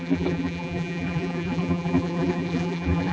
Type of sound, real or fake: fake